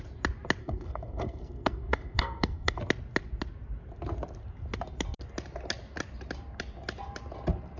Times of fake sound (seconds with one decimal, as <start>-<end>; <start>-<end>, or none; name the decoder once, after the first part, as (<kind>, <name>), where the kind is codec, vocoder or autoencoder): 0.6-2.8 (codec, SNAC)